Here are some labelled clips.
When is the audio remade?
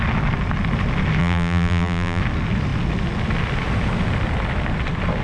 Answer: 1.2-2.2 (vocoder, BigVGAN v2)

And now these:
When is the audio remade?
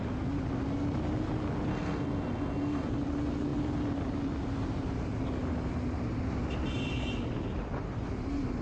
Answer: 1.7-2.9 (codec, SNAC)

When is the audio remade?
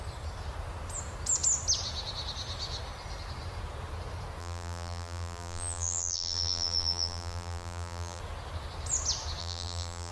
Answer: 4.4-8.2 (vocoder, BigVGAN v2); 9.4-10.1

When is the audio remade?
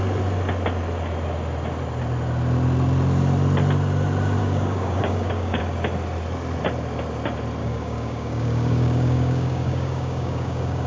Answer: 4.4-5.6 (codec, DAC); 7.6-10.9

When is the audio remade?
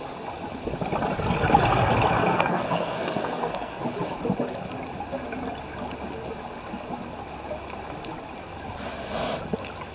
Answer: 2.2-3.8 (codec, SNAC)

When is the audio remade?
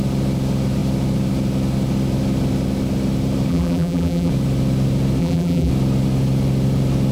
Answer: 3.5-4.3 (vocoder, BigVGAN v2); 5.2-5.7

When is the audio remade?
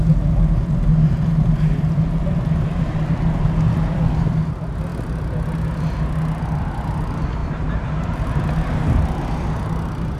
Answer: 7.4-8.3 (vocoder, BigVGAN v2)